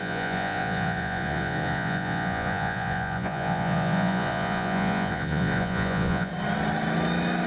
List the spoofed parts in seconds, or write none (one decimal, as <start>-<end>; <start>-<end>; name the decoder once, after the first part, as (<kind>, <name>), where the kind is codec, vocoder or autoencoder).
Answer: 0.0-6.3 (vocoder, Vocos)

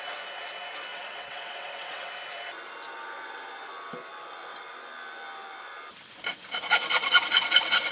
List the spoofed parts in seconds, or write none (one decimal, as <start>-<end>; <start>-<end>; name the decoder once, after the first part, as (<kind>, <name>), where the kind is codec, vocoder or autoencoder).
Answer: 0.9-2.1 (vocoder, WaveNeXt)

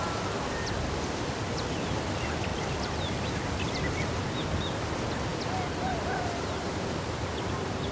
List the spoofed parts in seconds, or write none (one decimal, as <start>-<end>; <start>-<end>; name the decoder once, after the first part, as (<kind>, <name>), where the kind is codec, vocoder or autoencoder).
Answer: 2.5-3.8 (vocoder, BigVGAN v2); 5.3-7.9

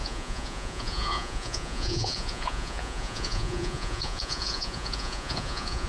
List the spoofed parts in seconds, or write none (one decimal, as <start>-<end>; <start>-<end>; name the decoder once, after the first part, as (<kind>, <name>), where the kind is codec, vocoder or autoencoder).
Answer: 0.0-5.9 (vocoder, Vocos)

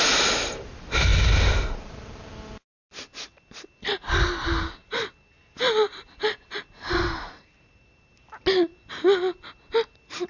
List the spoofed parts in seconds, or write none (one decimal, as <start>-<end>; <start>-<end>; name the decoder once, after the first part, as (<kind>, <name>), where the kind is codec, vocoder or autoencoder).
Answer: 4.8-8.4 (vocoder, BigVGAN v2)

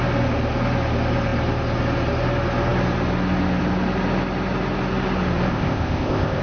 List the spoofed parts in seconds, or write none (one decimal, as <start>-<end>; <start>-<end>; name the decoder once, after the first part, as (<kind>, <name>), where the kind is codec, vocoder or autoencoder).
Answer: 5.5-6.4 (codec, ZipCodec)

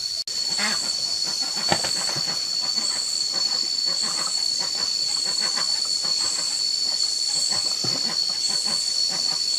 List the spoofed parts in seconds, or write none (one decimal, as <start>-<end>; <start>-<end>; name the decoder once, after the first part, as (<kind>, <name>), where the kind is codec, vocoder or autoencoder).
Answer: none